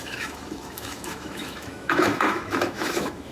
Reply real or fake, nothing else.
fake